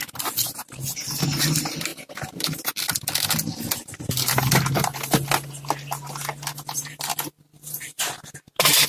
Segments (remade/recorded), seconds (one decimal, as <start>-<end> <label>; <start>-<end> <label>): 0.0-8.9 recorded